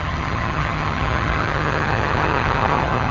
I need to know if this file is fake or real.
fake